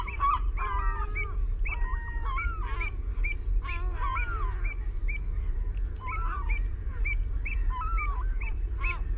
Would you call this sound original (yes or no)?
yes